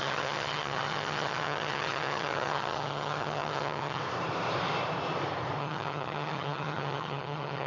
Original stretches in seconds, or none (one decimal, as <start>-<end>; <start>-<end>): 4.0-5.6